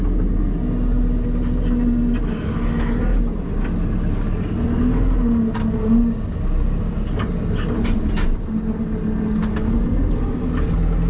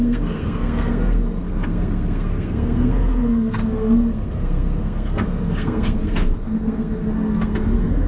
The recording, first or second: first